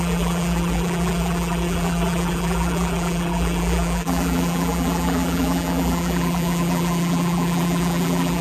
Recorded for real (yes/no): no